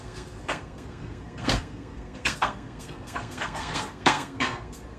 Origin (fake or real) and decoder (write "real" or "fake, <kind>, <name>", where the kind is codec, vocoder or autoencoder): fake, codec, SNAC